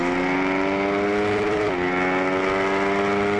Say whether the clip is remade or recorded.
recorded